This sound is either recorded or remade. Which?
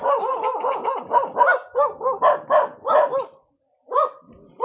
recorded